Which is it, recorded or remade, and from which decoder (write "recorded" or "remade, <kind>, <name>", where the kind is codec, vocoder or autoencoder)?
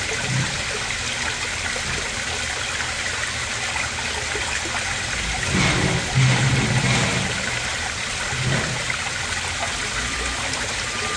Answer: recorded